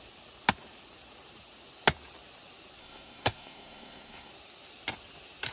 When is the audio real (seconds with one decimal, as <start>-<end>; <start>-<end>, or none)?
0.0-2.8; 4.3-5.5